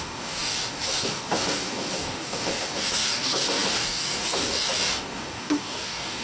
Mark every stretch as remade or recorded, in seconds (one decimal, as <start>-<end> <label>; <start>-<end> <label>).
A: 0.0-6.2 remade